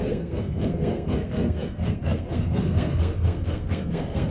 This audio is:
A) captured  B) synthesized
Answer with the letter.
B